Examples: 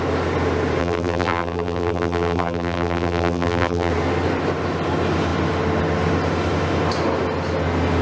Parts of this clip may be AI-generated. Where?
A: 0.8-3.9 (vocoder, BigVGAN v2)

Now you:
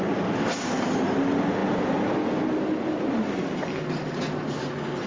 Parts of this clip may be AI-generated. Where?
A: none

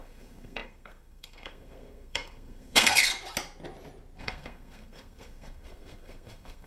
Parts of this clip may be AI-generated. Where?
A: 0.0-3.1 (codec, SNAC); 4.2-6.7

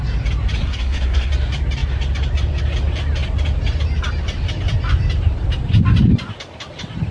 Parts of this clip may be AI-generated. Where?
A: 0.6-1.3 (codec, SNAC)

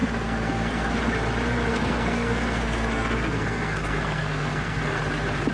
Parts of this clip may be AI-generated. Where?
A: 0.0-0.9 (codec, SNAC); 1.7-5.0

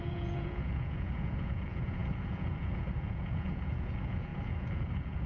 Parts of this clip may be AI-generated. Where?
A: 0.0-5.3 (vocoder, Vocos)

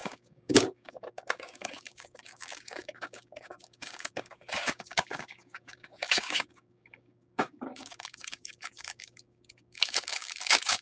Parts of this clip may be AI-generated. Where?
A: 0.0-10.8 (codec, DAC)

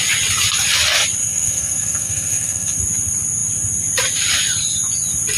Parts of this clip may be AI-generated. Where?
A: 1.2-2.8 (codec, SNAC)